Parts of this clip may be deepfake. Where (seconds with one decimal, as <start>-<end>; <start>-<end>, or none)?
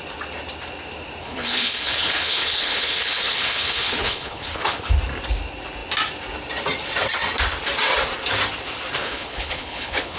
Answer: 1.2-4.9; 9.0-10.2